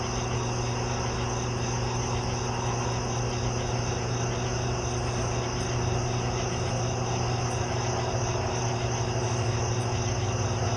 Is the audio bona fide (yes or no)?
yes